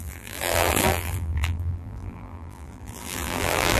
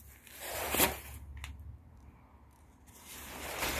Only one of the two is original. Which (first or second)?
second